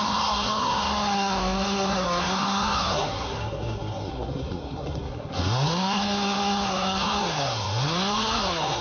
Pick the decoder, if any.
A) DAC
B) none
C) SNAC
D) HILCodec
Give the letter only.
C